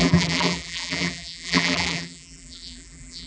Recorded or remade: remade